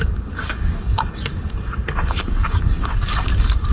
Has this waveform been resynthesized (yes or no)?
yes